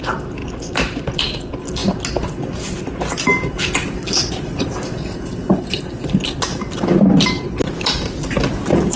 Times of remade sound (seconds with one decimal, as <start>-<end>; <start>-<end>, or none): 0.0-0.4; 1.1-1.8; 5.5-9.0